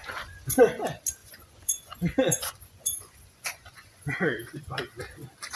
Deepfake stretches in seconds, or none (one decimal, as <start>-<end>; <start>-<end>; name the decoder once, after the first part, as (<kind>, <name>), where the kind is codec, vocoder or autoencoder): 0.0-0.6 (vocoder, Vocos); 1.2-4.6